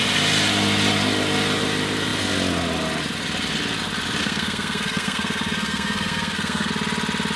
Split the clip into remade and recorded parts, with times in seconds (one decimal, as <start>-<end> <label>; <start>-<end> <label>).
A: 0.0-4.2 recorded; 4.2-6.7 remade; 6.7-7.4 recorded